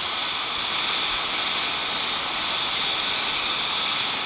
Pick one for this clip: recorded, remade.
recorded